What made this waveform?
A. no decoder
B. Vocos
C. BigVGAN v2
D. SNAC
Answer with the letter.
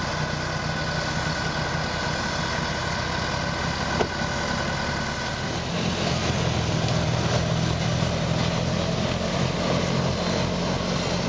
A